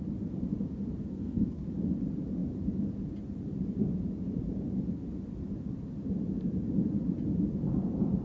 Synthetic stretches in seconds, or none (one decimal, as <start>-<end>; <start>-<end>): 1.1-1.7